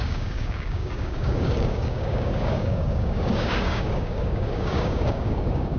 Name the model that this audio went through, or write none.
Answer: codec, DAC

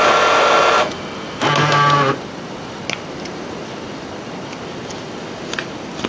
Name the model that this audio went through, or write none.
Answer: none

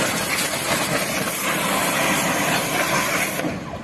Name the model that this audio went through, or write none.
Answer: none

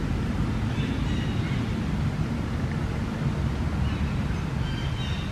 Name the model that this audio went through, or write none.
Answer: none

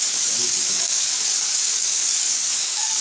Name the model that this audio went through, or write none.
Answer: codec, DAC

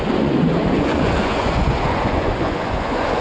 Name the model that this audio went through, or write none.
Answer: vocoder, Vocos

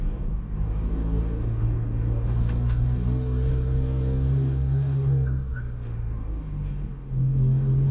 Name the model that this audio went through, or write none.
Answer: codec, DAC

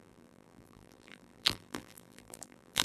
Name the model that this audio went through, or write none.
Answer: vocoder, BigVGAN v2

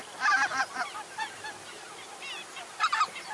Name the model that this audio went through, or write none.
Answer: vocoder, BigVGAN v2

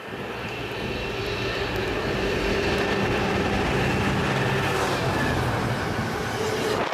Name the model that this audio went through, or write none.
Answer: none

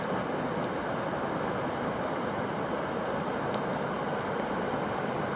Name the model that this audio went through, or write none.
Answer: none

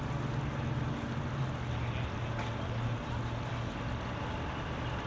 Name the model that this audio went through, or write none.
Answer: none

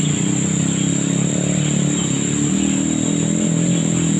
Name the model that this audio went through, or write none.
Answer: none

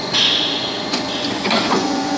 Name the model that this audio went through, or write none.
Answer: vocoder, Vocos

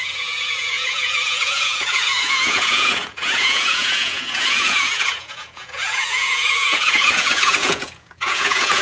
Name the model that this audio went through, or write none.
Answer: vocoder, Vocos